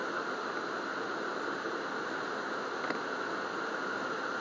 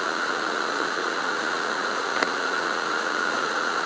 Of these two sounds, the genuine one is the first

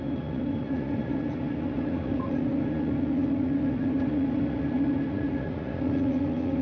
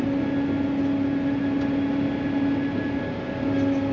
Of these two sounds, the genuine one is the second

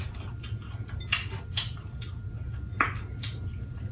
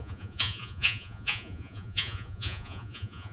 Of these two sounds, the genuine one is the first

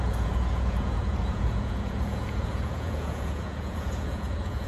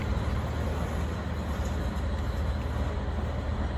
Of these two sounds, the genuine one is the second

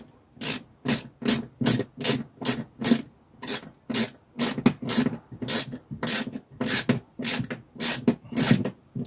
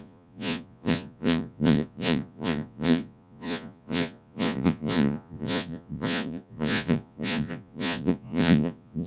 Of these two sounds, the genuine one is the first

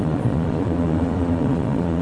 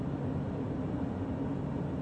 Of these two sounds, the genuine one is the second